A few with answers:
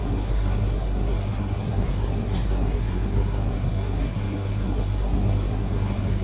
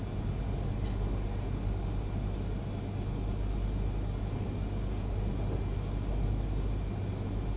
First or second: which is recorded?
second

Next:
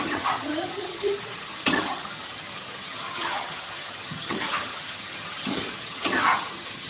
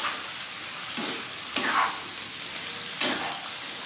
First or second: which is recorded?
second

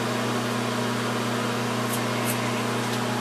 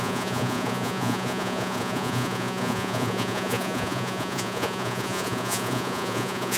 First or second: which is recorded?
first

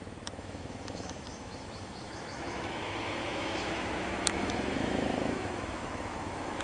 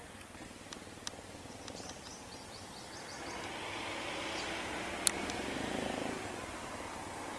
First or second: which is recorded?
second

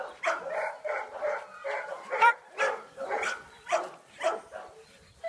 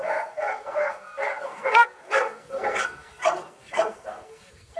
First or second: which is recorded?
first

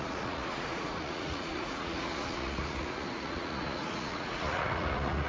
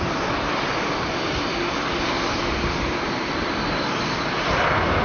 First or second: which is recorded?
second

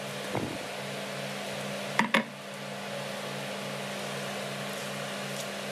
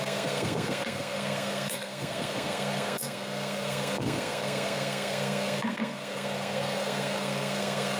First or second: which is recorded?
first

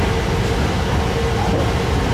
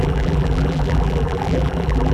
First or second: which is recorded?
first